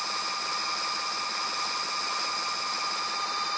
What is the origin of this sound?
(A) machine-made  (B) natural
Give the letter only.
B